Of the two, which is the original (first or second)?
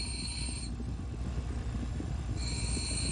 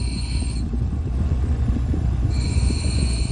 first